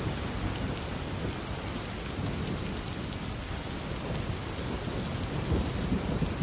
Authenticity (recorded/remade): recorded